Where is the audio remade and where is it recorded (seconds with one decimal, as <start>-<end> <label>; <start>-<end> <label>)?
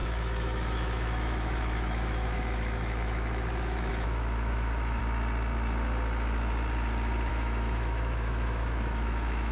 0.0-5.0 remade; 5.0-7.3 recorded; 7.3-9.5 remade